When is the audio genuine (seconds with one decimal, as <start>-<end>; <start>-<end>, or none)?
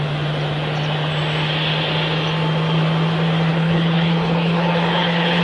0.0-3.5